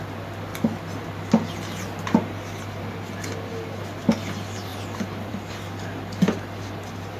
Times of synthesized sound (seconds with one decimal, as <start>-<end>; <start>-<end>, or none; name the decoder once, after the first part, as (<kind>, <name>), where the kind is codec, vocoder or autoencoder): none